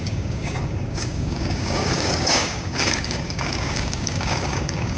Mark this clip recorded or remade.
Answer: remade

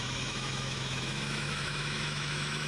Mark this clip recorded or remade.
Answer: remade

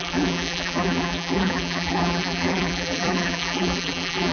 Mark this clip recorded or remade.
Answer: remade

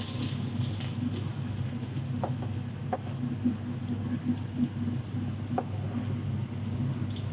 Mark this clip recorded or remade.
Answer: recorded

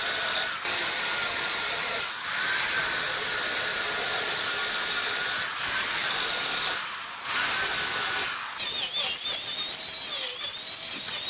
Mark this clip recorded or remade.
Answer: recorded